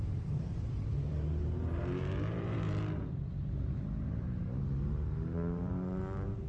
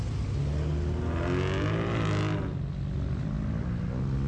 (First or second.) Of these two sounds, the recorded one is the second